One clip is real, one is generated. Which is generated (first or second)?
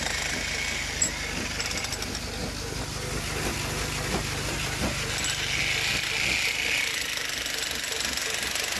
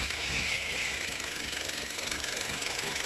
second